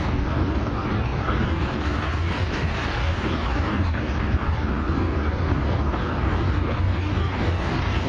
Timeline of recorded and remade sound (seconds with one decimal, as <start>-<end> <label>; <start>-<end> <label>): 0.0-8.1 remade